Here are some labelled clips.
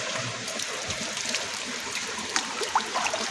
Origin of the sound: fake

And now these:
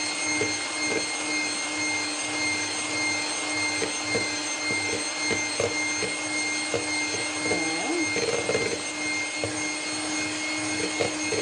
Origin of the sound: real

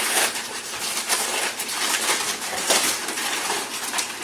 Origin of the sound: fake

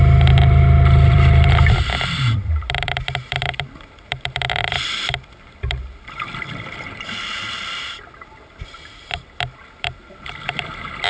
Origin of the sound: fake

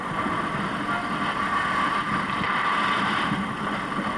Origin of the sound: real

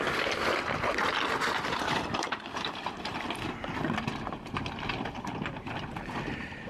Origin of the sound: fake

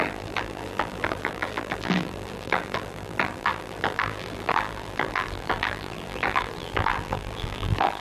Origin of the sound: fake